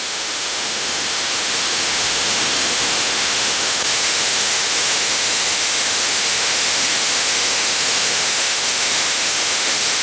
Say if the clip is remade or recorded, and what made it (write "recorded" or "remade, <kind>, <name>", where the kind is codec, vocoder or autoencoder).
remade, autoencoder, DAC-VAE